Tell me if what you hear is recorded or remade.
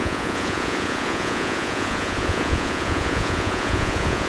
remade